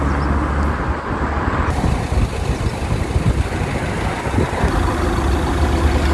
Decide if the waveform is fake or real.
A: real